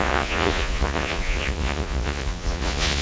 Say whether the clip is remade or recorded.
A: remade